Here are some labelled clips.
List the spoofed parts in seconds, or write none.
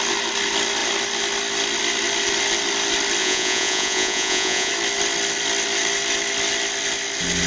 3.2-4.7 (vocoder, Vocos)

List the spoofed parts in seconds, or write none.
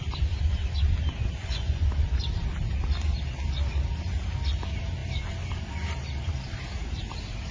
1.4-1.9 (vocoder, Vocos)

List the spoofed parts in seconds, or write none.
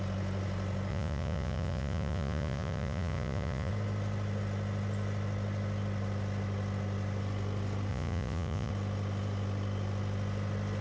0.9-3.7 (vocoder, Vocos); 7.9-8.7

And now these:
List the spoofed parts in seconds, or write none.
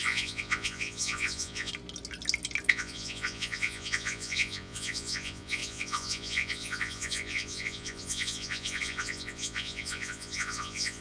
0.0-1.7 (vocoder, Vocos); 2.7-11.0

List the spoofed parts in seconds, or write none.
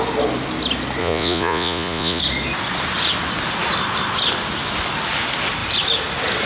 1.0-2.2 (vocoder, Vocos)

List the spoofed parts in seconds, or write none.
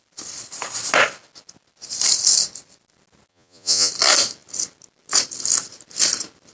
3.3-3.9 (vocoder, Vocos)